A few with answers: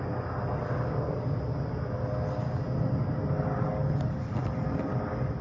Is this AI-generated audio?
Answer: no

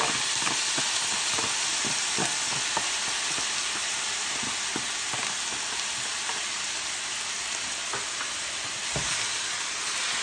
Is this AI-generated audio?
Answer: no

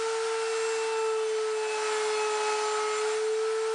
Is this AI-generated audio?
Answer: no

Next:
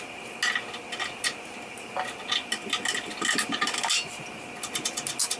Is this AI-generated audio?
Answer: no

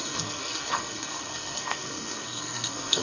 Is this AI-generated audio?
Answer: yes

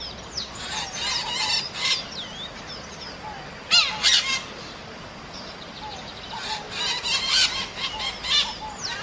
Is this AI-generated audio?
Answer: no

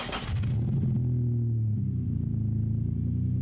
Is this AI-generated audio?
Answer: no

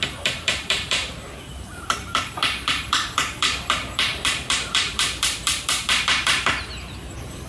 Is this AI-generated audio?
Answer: yes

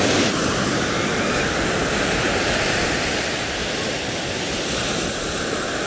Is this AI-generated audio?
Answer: no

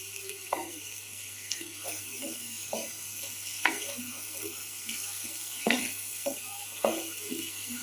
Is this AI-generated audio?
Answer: yes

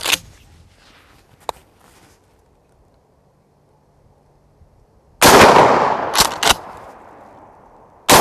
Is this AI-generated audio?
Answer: no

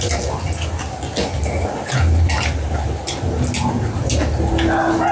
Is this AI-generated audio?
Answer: no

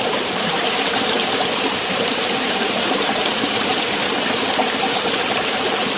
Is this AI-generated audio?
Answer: yes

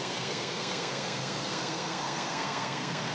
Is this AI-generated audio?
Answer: yes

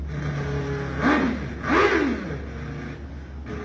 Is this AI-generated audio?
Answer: no